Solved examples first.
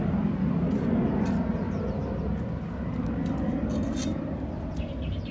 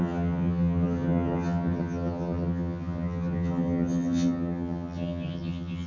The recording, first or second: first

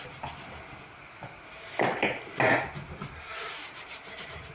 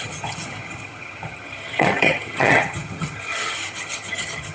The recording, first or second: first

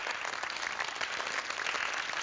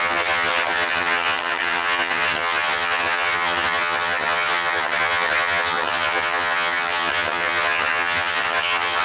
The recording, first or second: first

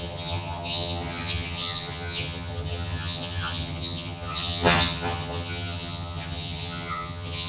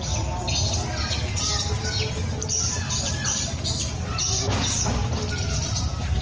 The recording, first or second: second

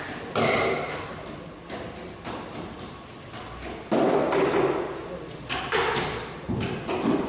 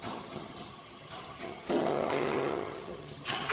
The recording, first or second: first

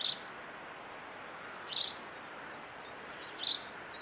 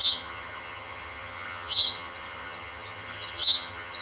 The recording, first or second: first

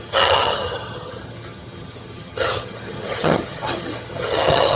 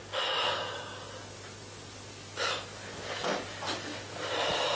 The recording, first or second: second